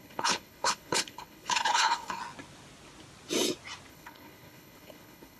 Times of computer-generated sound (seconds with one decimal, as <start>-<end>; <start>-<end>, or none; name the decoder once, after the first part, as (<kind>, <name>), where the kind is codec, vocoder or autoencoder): 0.0-2.2 (codec, HILCodec); 3.9-5.4